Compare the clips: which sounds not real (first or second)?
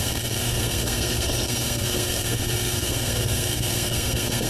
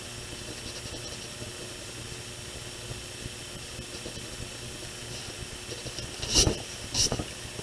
first